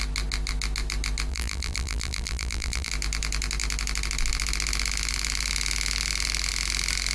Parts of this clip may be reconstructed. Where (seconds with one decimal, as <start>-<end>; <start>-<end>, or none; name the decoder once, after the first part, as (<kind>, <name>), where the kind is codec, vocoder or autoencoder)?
1.3-2.9 (vocoder, BigVGAN v2)

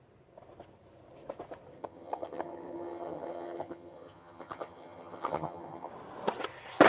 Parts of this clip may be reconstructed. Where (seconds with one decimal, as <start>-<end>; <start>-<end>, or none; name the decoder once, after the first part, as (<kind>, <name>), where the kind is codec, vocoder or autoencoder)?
1.8-5.9 (vocoder, HiFi-GAN)

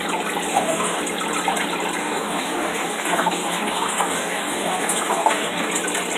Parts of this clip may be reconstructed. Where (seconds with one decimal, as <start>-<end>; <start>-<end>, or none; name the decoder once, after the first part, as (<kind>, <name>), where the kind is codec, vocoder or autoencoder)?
0.5-1.0 (codec, DAC); 2.0-5.7

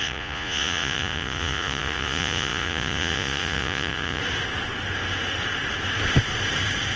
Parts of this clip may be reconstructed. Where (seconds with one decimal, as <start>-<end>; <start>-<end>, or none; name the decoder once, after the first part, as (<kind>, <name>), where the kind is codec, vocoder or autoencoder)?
0.0-4.2 (vocoder, Vocos)